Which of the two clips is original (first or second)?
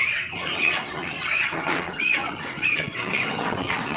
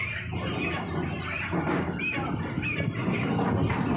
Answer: second